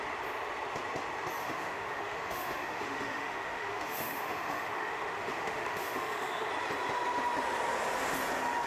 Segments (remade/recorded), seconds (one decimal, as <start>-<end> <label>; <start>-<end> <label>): 0.0-1.4 recorded; 1.4-6.5 remade; 6.5-8.7 recorded